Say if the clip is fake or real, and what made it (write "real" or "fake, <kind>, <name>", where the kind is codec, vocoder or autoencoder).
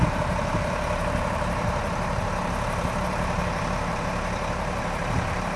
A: fake, vocoder, BigVGAN v2